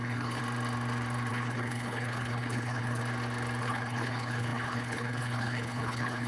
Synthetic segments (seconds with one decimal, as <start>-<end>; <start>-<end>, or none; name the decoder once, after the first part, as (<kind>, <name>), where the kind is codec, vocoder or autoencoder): 0.0-0.4 (codec, HILCodec); 1.3-3.0; 3.6-6.3